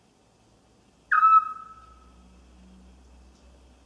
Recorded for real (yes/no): yes